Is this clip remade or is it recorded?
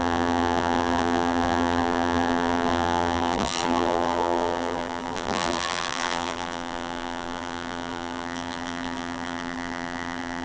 remade